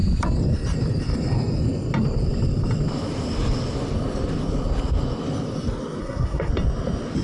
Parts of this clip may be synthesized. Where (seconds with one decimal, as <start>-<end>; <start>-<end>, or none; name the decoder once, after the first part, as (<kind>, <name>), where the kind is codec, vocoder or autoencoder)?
6.0-6.5 (codec, SNAC)